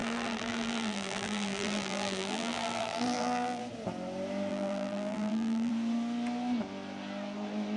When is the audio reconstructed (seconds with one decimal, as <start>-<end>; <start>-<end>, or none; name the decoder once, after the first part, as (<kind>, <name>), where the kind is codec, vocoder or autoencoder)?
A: 0.0-3.6 (vocoder, BigVGAN v2); 4.5-5.7